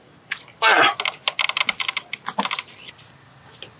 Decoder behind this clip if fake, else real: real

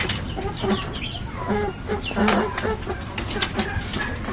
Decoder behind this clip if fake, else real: real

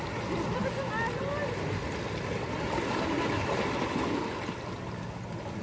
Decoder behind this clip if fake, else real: real